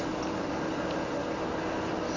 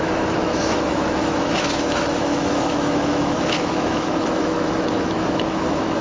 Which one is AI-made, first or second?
second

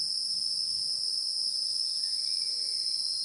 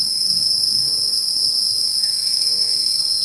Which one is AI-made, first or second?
second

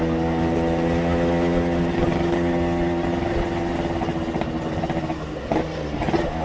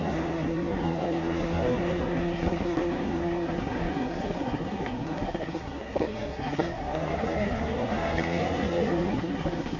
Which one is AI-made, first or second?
second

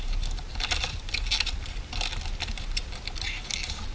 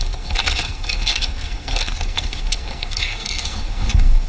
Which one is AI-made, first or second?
second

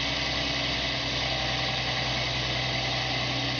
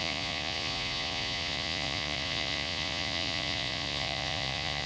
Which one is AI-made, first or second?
second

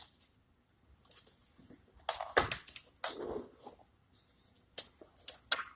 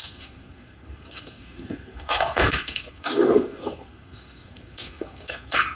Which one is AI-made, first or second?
second